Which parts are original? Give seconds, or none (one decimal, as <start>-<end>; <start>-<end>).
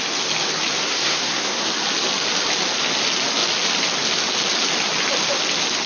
0.0-0.8; 1.7-5.9